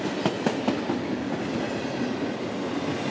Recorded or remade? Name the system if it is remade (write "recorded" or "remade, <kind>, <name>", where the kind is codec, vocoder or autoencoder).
recorded